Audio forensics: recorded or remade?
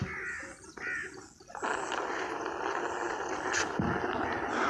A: recorded